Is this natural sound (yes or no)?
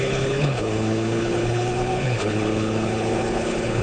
no